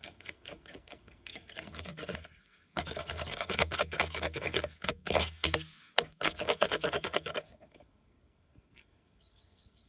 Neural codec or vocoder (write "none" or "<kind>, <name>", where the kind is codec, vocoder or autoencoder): codec, SNAC